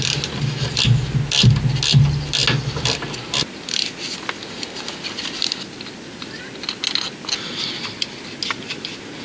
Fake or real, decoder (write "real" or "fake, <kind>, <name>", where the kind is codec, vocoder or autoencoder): real